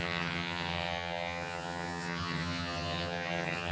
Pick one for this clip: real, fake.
fake